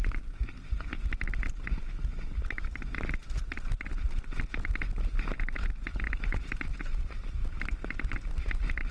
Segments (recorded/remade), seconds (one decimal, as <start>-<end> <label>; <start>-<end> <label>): 0.0-0.5 remade; 0.5-3.2 recorded; 3.2-7.0 remade; 7.0-7.4 recorded; 7.4-8.9 remade